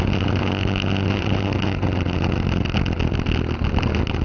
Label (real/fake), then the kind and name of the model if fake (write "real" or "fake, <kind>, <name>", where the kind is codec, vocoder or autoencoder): real